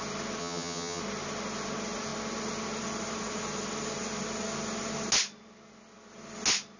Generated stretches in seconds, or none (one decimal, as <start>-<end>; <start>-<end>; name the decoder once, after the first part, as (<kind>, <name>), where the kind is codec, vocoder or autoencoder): 0.4-1.0 (vocoder, HiFi-GAN)